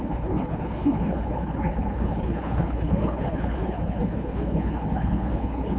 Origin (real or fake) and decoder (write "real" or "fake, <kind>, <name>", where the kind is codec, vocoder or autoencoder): fake, codec, HILCodec